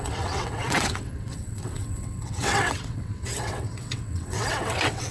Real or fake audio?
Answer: fake